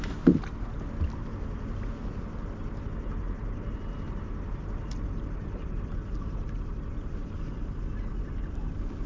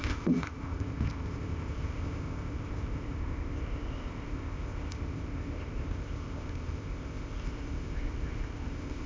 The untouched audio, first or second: first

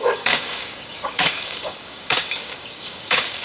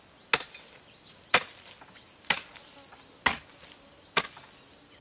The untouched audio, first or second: second